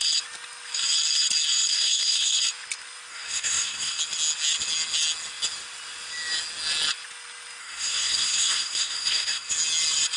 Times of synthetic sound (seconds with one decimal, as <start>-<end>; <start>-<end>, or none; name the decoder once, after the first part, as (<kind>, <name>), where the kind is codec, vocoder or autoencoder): 1.7-2.4 (codec, SNAC); 3.1-4.0; 7.6-9.5